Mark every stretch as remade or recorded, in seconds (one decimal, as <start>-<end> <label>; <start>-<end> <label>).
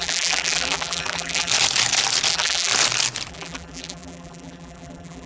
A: 0.0-1.5 remade; 1.5-2.3 recorded; 2.3-2.7 remade; 2.7-3.3 recorded; 3.3-5.3 remade